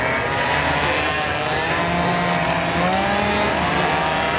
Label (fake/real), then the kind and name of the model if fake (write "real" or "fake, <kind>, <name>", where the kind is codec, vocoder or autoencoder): real